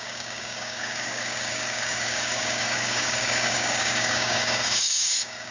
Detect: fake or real fake